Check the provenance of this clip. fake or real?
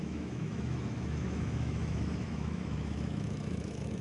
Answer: fake